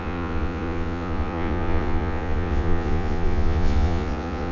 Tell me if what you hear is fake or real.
fake